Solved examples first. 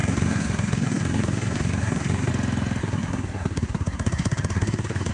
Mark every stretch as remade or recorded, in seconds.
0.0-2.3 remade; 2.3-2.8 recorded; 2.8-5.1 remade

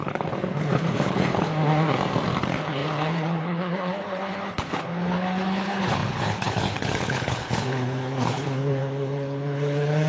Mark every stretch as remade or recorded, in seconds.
0.0-1.5 remade; 1.5-2.4 recorded; 2.4-10.1 remade

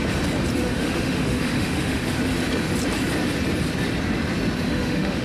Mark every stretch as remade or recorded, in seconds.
0.0-0.6 recorded; 0.6-2.0 remade; 2.0-4.7 recorded; 4.7-5.2 remade

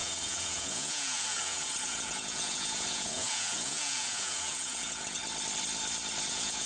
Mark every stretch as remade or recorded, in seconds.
0.0-5.2 remade; 5.2-6.3 recorded; 6.3-6.7 remade